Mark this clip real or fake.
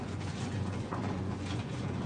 fake